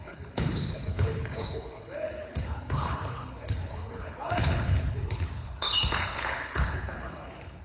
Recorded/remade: remade